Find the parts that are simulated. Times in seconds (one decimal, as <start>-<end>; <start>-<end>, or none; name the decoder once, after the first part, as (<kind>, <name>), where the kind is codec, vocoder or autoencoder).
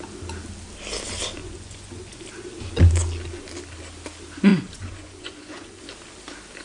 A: 1.4-2.2 (vocoder, Vocos); 4.5-5.8